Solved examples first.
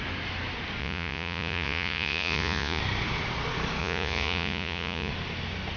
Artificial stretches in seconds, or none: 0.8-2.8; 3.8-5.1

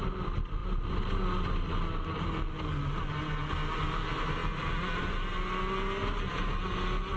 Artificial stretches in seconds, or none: none

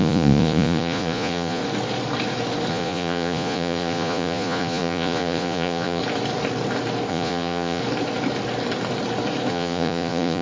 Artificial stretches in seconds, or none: 0.0-1.6; 2.7-6.0; 7.1-7.8; 9.5-10.4

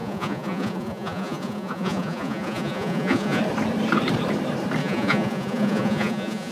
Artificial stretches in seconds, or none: 0.0-3.4; 4.8-6.5